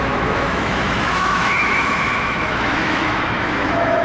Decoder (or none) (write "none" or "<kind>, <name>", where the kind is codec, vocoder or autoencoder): autoencoder, DAC-VAE